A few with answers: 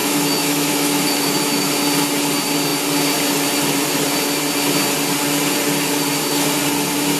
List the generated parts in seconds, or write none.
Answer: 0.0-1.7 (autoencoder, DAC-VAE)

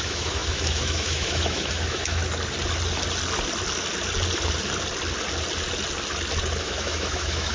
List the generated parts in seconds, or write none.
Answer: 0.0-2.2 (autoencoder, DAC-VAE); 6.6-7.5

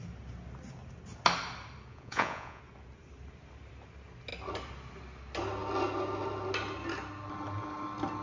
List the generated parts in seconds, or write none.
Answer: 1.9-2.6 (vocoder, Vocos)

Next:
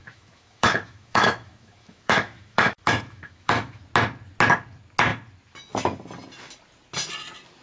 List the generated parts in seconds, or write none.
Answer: 0.0-3.8 (autoencoder, DAC-VAE)

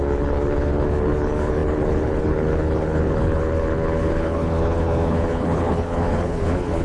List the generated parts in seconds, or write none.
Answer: 0.0-6.8 (codec, HILCodec)

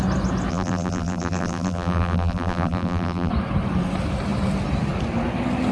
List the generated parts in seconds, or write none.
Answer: 0.5-3.3 (vocoder, BigVGAN v2)

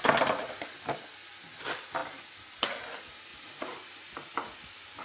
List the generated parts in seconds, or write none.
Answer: 3.3-5.0 (vocoder, BigVGAN v2)